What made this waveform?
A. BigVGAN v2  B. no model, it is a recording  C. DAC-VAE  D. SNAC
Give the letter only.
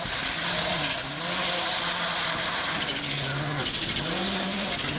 B